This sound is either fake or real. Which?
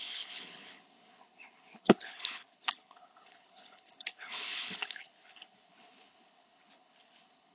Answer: fake